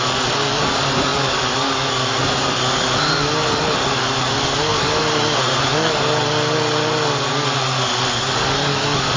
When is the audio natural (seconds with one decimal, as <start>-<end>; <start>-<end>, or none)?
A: 0.0-9.2